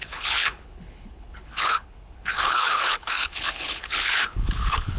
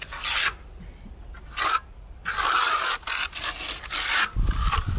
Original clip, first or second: second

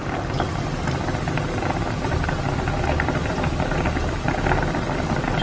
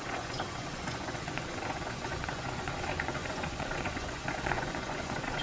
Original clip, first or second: first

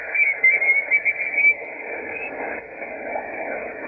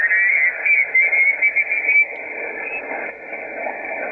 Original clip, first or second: second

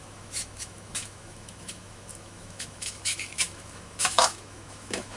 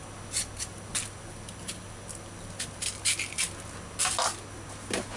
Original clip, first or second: second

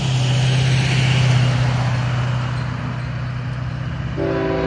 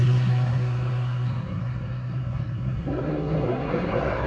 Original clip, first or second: first